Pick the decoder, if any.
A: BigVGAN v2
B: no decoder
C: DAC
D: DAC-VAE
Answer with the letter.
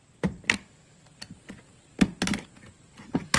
B